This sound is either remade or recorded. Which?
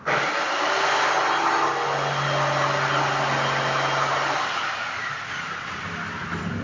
recorded